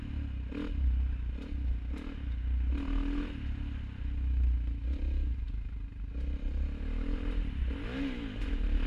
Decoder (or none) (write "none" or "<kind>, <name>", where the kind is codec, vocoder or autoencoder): none